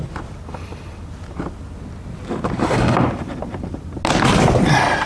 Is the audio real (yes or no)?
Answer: yes